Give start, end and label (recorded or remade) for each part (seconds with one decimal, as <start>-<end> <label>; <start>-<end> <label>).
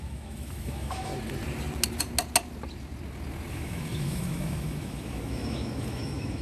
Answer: 0.0-1.1 remade; 1.1-3.5 recorded; 3.5-6.4 remade